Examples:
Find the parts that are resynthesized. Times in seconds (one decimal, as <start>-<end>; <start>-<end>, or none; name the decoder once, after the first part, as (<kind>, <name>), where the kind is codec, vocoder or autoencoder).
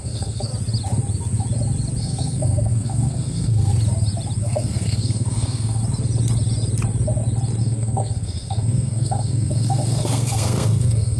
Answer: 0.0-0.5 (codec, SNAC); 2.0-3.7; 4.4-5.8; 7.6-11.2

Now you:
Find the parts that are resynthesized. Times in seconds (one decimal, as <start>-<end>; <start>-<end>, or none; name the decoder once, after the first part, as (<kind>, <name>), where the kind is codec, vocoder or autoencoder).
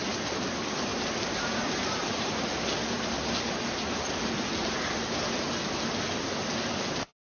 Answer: 0.9-2.6 (vocoder, BigVGAN v2)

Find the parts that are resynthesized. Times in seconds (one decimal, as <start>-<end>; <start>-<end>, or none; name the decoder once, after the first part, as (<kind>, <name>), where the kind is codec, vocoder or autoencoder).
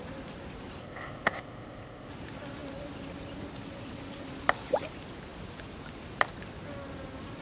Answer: 0.8-2.1 (codec, ZipCodec)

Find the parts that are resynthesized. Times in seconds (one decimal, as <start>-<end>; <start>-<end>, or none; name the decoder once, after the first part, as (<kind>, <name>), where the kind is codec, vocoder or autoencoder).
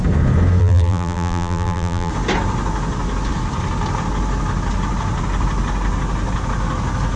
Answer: 0.6-2.1 (vocoder, BigVGAN v2)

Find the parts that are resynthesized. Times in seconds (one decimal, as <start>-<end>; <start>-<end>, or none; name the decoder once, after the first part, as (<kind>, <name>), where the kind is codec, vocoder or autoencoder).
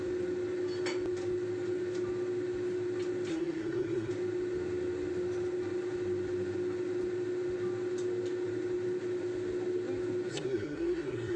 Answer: 3.3-4.1 (codec, SNAC); 10.3-11.4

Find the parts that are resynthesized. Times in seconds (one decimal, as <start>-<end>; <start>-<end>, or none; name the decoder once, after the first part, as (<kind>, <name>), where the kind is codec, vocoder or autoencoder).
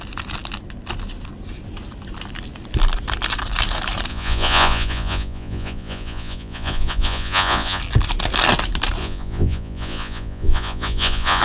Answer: 4.1-7.8 (vocoder, Vocos); 9.0-11.4